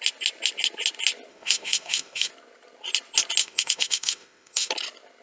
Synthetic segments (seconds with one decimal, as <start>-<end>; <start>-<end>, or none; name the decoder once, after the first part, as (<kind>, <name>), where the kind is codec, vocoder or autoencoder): 1.3-2.3 (autoencoder, DAC-VAE); 3.4-4.7